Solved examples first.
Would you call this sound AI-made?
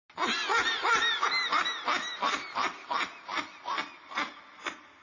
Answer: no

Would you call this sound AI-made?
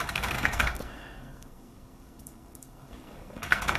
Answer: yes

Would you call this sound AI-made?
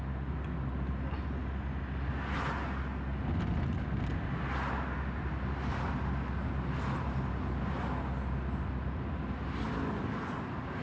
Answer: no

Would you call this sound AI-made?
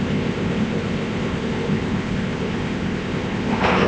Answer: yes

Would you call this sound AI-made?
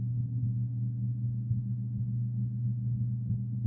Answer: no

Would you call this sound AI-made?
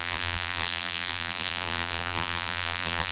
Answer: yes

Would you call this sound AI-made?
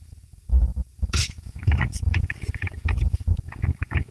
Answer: yes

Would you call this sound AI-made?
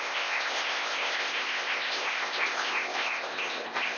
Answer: yes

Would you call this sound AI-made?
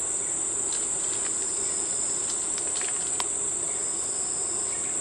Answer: no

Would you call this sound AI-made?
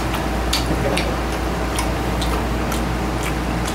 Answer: no